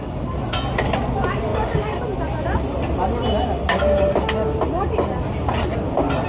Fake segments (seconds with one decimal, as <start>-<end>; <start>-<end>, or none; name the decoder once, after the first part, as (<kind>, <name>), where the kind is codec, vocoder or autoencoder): none